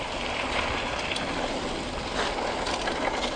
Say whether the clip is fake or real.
real